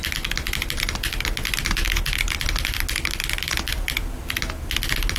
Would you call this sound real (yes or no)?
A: yes